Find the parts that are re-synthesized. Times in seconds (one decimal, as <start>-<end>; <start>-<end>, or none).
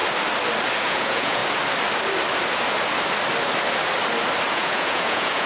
0.8-1.4; 4.5-5.5